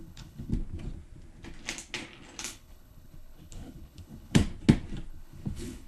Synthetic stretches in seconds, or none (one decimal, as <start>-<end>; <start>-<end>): 0.0-0.5; 2.4-4.4; 5.1-5.9